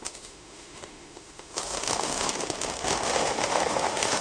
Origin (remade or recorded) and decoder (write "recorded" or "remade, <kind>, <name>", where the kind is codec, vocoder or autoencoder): remade, autoencoder, DAC-VAE